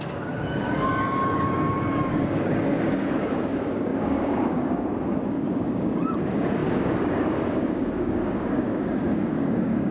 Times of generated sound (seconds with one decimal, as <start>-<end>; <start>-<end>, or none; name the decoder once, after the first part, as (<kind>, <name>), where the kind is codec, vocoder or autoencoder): 0.0-9.9 (codec, DAC)